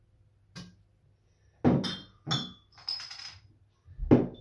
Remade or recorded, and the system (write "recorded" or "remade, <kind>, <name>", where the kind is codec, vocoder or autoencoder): recorded